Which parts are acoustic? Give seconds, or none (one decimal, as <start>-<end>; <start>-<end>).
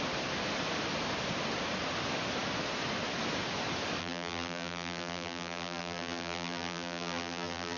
0.0-4.0